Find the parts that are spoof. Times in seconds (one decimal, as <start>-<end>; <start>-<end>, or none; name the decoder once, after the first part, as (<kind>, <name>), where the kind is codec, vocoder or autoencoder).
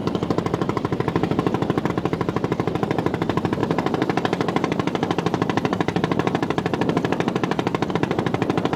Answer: 0.0-8.8 (vocoder, BigVGAN v2)